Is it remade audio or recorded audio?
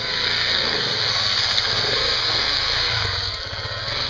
remade